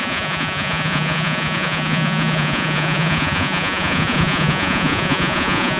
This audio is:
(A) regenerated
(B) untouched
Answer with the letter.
A